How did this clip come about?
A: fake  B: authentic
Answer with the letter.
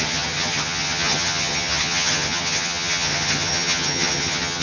A